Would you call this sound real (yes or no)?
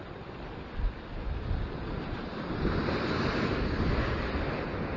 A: yes